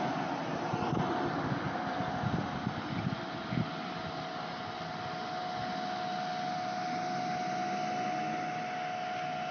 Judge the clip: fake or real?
real